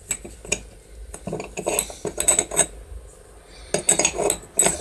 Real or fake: real